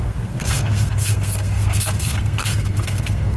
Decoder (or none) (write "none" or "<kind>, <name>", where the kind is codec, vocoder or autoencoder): codec, SNAC